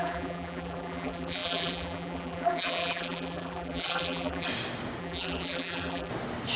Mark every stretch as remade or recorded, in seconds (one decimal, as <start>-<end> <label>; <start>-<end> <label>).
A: 0.0-4.5 remade; 4.5-5.0 recorded; 5.0-6.1 remade; 6.1-6.6 recorded